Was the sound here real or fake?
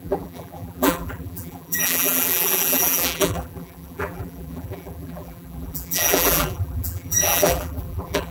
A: fake